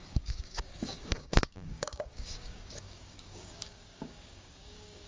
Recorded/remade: remade